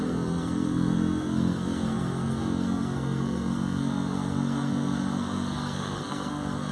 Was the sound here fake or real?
fake